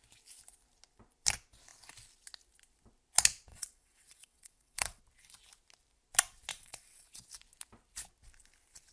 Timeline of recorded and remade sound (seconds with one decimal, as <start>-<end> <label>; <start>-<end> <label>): 0.0-3.5 recorded; 3.5-5.0 remade; 5.0-6.5 recorded; 6.5-7.2 remade; 7.2-8.9 recorded